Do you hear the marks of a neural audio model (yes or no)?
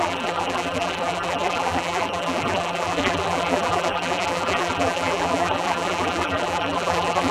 yes